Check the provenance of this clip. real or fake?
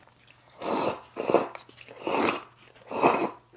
real